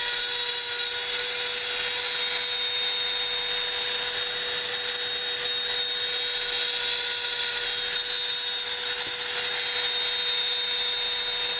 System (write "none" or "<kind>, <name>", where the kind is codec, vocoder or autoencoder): none